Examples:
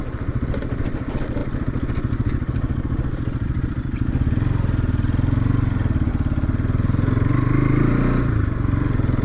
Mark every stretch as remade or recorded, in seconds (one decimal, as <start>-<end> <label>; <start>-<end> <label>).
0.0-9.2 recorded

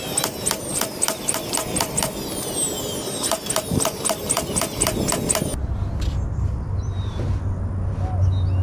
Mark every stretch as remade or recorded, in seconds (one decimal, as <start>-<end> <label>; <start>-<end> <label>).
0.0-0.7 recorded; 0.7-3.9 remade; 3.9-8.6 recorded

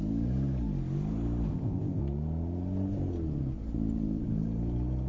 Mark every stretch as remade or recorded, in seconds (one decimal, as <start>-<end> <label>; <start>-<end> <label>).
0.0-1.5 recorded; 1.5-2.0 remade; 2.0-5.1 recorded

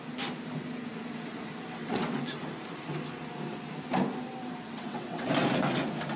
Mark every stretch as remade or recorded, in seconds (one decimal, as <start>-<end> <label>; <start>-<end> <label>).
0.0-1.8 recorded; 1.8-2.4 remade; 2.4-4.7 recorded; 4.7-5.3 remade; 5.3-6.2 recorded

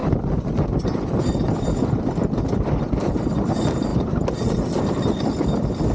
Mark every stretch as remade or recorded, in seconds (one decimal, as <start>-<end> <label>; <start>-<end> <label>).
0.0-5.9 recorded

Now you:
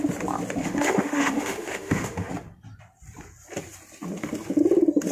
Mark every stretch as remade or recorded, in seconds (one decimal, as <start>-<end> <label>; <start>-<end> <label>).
0.0-0.6 recorded; 0.6-2.3 remade; 2.3-5.1 recorded

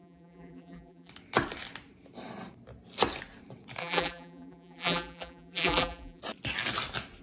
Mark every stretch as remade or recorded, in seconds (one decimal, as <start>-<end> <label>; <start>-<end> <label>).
0.0-1.1 remade; 1.1-3.8 recorded; 3.8-6.2 remade; 6.2-7.2 recorded